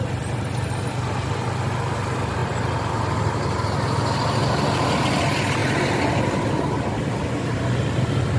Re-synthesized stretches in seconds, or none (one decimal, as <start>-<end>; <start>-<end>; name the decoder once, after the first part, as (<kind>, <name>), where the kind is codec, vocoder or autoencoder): none